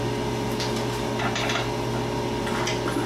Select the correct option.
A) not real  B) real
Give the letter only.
B